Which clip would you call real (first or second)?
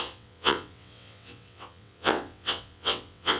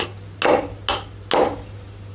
second